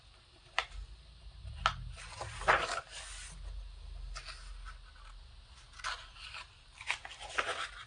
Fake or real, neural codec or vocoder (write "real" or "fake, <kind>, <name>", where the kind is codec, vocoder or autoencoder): real